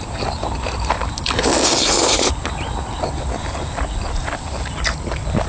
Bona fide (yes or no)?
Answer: yes